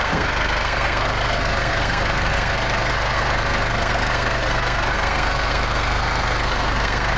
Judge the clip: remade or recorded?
remade